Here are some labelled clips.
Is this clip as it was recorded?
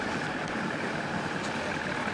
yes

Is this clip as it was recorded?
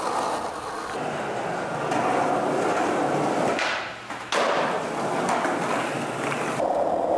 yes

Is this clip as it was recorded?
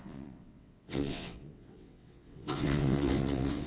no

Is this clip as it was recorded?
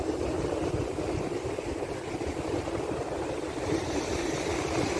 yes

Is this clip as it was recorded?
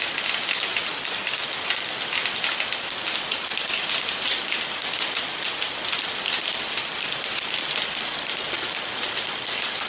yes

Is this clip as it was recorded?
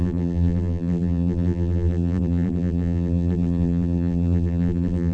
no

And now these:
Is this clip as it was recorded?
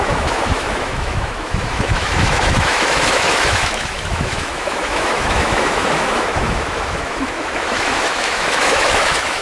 no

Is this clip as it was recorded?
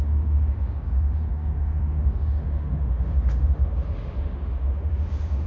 no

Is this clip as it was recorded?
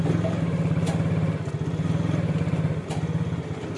yes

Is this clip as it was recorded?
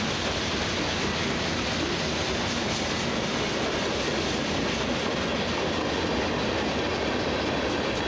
yes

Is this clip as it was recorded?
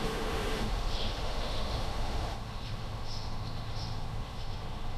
no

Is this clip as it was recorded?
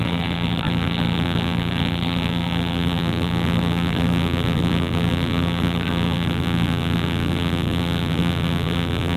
no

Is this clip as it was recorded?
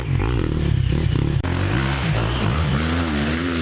yes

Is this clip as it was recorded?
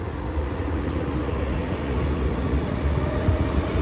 no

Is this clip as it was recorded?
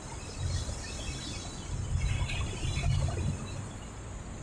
yes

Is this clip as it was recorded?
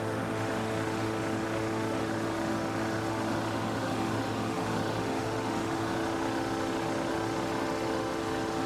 no